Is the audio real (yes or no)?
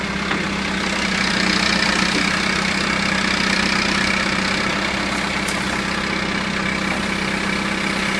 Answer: yes